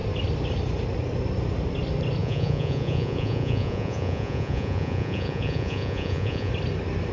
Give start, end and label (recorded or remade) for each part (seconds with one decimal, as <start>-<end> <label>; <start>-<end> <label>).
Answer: 0.0-2.2 recorded; 2.2-6.5 remade; 6.5-7.1 recorded

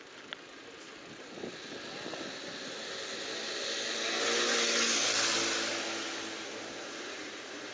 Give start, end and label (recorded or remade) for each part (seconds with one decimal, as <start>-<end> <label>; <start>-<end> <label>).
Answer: 0.0-6.8 recorded; 6.8-7.7 remade